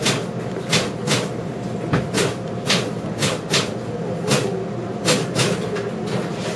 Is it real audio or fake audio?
real